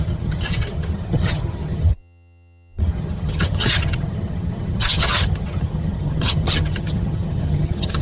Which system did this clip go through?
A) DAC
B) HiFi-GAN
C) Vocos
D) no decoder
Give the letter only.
B